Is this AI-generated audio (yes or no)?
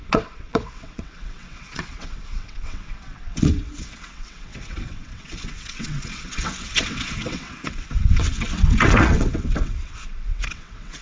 yes